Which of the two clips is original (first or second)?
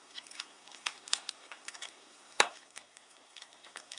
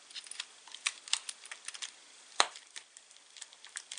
second